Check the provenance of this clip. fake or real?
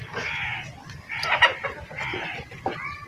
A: real